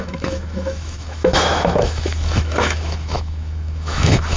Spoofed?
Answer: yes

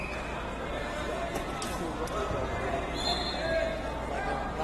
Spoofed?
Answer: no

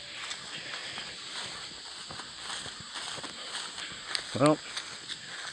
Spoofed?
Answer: no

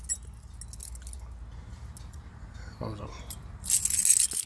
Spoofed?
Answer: no